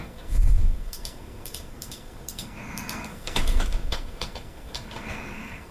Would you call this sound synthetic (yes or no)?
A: yes